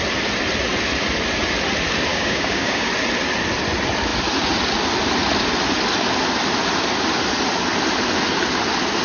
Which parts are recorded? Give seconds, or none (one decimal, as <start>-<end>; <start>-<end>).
0.0-2.1; 2.9-9.0